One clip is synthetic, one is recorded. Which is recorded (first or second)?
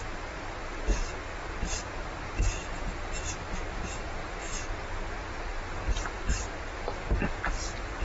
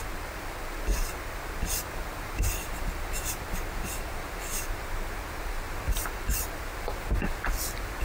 first